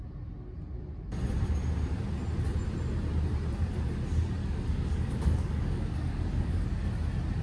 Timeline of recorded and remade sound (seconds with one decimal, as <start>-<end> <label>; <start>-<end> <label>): 0.0-4.4 recorded; 4.4-6.9 remade; 6.9-7.4 recorded